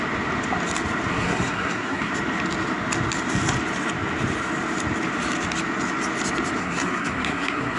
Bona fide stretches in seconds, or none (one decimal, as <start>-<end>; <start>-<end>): 0.0-1.1; 2.1-6.6